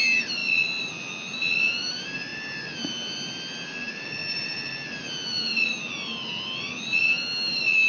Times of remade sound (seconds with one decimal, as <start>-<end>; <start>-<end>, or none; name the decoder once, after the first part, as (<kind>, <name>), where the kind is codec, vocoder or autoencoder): none